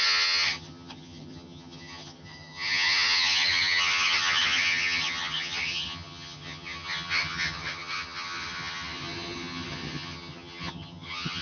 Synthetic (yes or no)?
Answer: yes